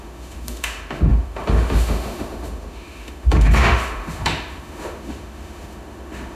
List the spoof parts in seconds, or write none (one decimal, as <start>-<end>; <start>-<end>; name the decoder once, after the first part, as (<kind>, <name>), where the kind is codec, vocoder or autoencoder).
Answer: 0.0-6.4 (autoencoder, DAC-VAE)